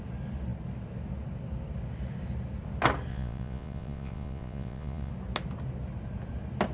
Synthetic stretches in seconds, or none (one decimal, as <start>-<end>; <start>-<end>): 3.1-5.1